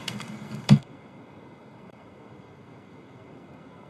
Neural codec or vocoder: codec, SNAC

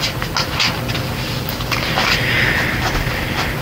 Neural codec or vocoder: none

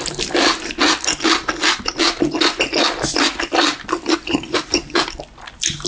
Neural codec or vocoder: none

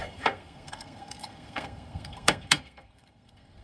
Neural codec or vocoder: codec, SNAC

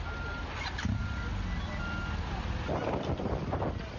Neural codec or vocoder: none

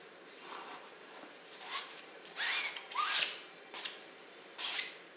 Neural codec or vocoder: none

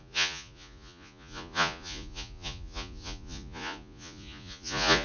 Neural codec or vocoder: vocoder, Vocos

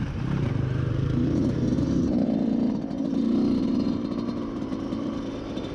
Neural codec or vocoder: vocoder, BigVGAN v2